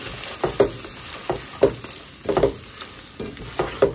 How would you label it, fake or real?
real